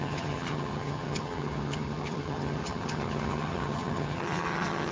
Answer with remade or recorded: remade